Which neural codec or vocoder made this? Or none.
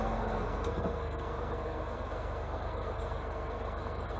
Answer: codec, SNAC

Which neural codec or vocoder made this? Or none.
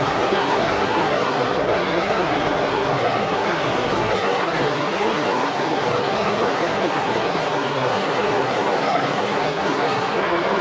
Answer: codec, SNAC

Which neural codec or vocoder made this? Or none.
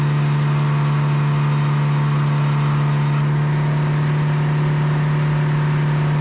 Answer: none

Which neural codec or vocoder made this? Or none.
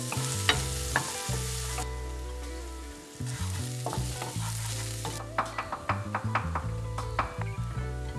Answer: none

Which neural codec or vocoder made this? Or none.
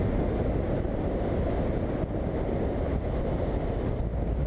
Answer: none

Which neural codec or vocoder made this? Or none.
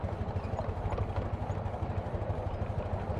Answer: none